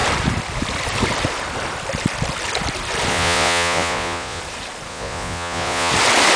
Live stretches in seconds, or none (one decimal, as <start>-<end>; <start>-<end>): 0.0-3.1; 4.4-4.9; 5.9-6.4